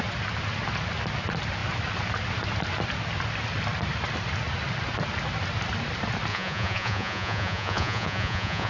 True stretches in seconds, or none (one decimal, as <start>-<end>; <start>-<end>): 0.0-6.3